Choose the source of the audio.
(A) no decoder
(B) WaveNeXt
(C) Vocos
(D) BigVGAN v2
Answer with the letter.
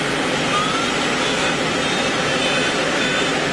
D